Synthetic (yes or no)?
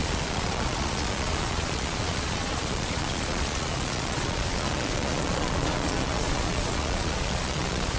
yes